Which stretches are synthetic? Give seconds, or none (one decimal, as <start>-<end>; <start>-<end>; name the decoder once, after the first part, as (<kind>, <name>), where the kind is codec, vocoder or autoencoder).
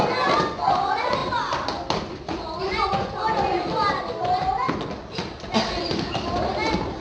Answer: none